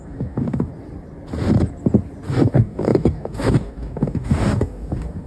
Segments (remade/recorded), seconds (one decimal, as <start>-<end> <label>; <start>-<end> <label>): 0.0-0.7 remade; 0.7-2.3 recorded; 2.3-5.3 remade